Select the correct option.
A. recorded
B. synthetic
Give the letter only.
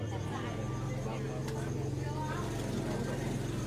A